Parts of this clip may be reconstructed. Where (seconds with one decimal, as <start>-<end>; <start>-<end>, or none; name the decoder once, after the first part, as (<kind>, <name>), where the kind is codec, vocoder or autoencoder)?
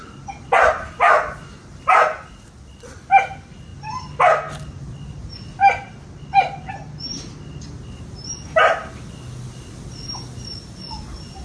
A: none